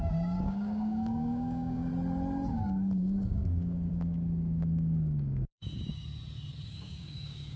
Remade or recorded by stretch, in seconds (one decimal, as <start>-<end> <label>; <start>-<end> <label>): 0.0-1.9 remade; 1.9-2.5 recorded; 2.5-5.6 remade; 5.6-6.7 recorded; 6.7-7.6 remade